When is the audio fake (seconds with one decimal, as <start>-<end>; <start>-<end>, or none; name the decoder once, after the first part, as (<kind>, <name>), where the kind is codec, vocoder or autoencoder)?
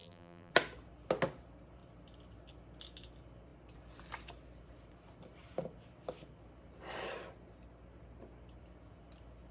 0.0-0.5 (vocoder, BigVGAN v2)